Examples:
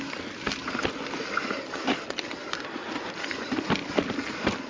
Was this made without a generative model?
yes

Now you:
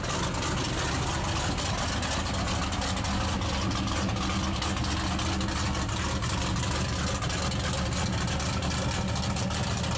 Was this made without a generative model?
yes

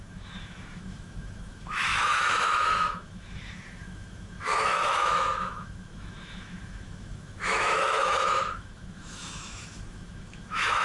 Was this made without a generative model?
no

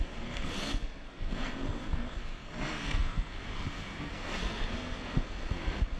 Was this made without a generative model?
no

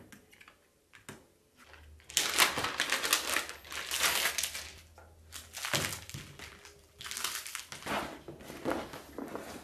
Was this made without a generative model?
yes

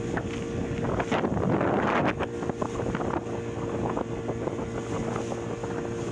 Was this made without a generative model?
yes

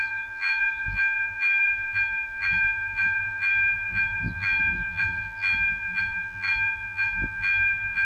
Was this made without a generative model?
no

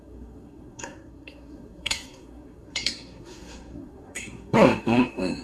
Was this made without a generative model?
no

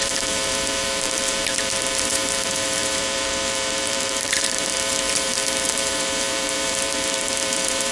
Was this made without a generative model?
no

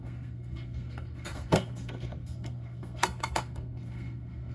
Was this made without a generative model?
no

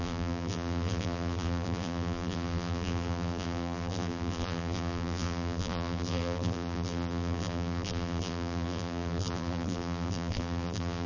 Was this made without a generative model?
no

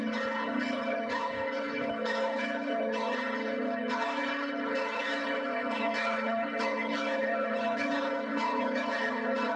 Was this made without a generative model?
no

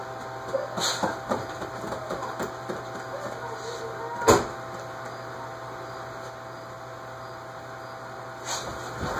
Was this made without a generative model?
yes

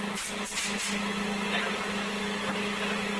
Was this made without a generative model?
yes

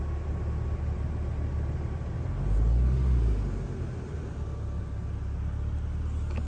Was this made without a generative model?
yes